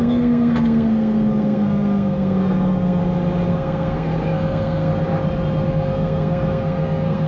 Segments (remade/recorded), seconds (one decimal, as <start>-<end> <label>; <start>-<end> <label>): 0.0-3.0 remade; 3.0-3.5 recorded; 3.5-4.9 remade; 4.9-5.7 recorded; 5.7-7.3 remade